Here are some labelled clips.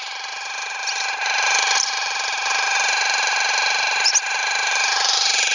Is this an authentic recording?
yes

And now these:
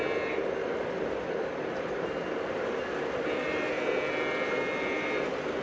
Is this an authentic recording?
yes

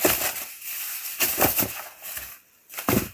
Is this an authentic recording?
yes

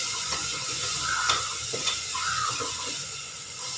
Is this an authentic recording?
no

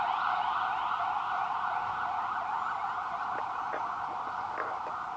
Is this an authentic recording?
yes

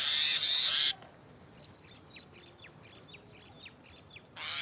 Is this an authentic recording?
yes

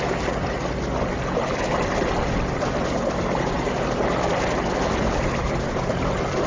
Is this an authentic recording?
yes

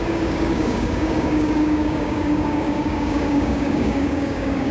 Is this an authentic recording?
no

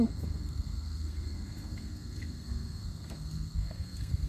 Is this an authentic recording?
no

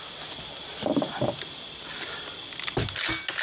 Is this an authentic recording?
yes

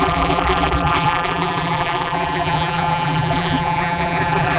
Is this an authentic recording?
no